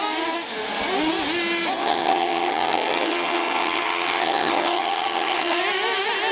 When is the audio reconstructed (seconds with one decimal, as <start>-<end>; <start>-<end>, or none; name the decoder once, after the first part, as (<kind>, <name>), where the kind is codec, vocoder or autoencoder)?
1.8-5.6 (vocoder, HiFi-GAN)